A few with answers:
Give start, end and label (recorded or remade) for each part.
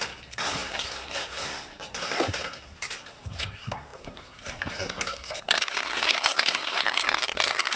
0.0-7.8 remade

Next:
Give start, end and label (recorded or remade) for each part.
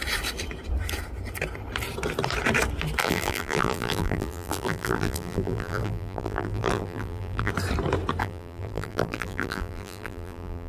0.0-3.0 recorded; 3.0-7.5 remade; 7.5-8.2 recorded; 8.2-10.7 remade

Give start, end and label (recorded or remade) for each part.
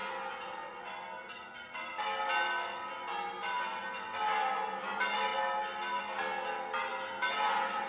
0.0-7.9 recorded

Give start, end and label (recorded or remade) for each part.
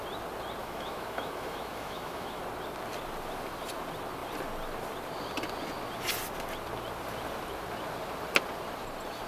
0.0-0.6 recorded; 0.6-2.4 remade; 2.4-9.3 recorded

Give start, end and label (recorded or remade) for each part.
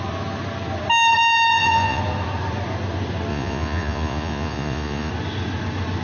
0.0-1.5 recorded; 1.5-2.0 remade; 2.0-3.3 recorded; 3.3-5.1 remade; 5.1-6.0 recorded